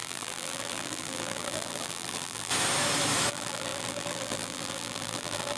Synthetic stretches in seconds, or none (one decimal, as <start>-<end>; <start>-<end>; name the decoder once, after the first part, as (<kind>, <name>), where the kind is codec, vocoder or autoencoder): 0.0-2.5 (vocoder, BigVGAN v2); 3.3-5.6